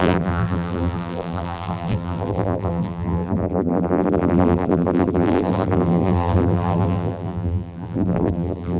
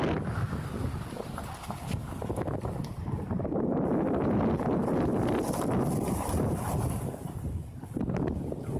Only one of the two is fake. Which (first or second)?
first